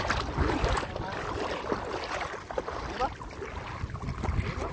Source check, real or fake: real